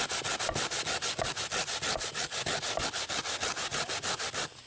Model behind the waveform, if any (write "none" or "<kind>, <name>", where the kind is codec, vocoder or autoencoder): none